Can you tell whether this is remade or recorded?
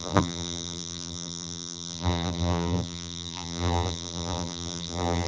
remade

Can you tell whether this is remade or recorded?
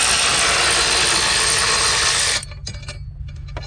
recorded